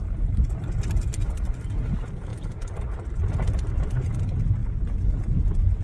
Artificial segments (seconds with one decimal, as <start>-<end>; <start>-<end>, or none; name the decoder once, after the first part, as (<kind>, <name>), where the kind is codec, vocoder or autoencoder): 2.3-3.7 (vocoder, BigVGAN v2)